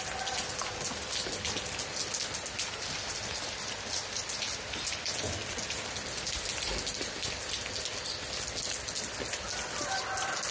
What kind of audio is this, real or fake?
real